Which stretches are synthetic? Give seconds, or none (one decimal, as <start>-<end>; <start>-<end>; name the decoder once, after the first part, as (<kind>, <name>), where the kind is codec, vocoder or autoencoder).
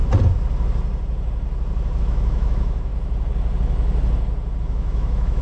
2.0-2.9 (autoencoder, DAC-VAE); 4.6-5.4